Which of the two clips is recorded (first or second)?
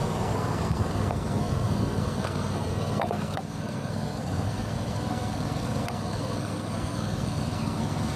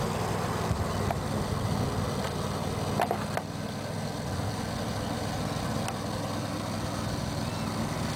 second